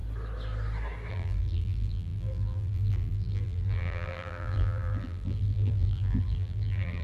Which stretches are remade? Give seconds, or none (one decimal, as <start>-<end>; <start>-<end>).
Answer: 1.1-7.0

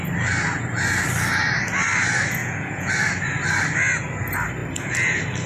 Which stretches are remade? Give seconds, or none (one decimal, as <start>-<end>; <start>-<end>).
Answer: 2.4-2.9

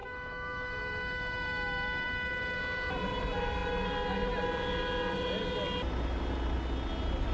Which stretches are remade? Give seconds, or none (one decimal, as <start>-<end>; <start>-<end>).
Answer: 0.0-2.6

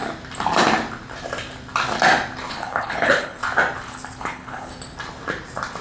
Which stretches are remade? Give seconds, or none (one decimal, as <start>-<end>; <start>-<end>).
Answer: 2.5-3.4; 4.2-4.7